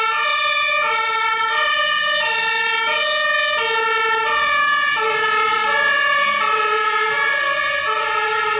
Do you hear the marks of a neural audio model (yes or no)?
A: no